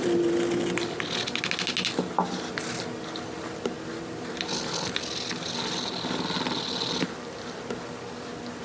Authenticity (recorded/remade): recorded